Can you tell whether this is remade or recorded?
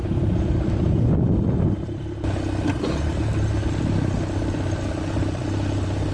recorded